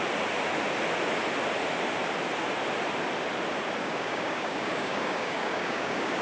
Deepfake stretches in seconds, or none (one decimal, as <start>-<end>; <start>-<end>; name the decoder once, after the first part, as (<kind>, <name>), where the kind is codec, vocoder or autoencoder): 3.8-6.2 (codec, DAC)